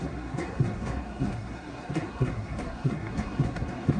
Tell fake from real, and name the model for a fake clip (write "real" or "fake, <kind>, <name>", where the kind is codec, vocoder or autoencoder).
fake, codec, SNAC